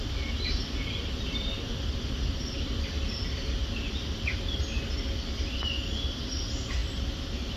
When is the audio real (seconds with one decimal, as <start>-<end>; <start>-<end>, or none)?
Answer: 4.6-6.8